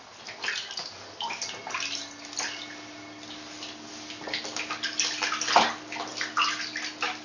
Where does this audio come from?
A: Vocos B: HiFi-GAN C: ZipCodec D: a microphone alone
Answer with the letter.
D